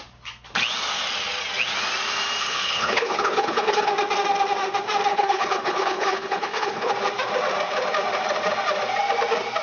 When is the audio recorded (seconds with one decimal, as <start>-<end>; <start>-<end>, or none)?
0.0-2.4; 3.9-5.1; 6.9-9.6